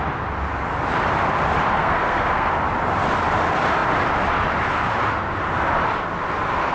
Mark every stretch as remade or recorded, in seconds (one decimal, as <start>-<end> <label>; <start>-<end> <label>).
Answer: 0.0-1.7 recorded; 1.7-2.5 remade; 2.5-6.7 recorded